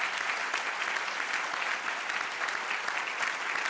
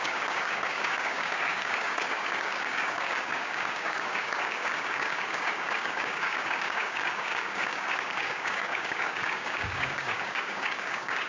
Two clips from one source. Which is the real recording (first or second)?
first